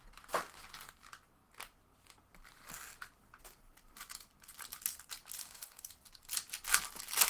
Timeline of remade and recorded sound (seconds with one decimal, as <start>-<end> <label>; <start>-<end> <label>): 0.0-5.4 recorded; 5.4-5.9 remade; 5.9-7.3 recorded